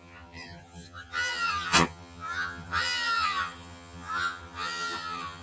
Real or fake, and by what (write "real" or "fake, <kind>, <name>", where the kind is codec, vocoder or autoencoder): fake, vocoder, HiFi-GAN